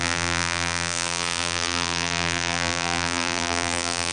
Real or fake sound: fake